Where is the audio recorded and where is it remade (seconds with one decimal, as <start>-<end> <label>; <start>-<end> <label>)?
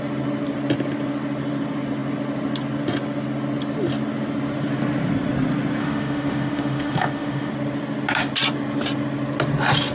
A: 0.0-5.8 recorded; 5.8-7.5 remade; 7.5-9.9 recorded